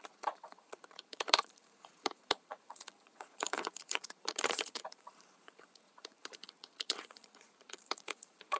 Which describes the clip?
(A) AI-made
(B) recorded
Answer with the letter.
A